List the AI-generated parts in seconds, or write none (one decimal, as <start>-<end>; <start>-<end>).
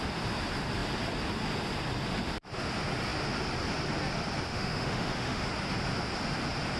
4.5-5.5